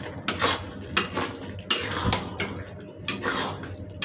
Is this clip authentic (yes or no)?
yes